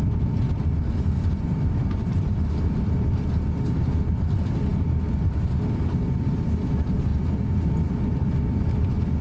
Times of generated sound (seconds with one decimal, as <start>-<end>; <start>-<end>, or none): 1.8-4.0; 7.1-8.0